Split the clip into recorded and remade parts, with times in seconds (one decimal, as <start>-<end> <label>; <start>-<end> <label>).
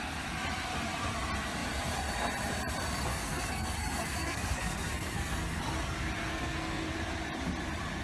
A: 0.0-3.1 recorded; 3.1-5.6 remade; 5.6-6.2 recorded; 6.2-6.9 remade; 6.9-8.0 recorded